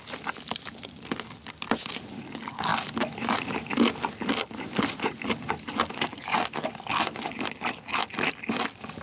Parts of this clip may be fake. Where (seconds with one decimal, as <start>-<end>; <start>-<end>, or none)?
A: none